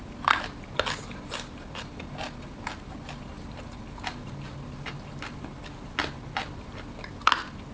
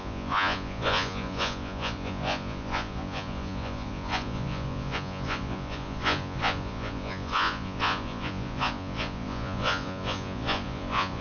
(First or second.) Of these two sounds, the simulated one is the second